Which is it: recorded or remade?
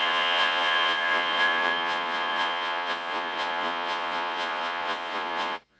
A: remade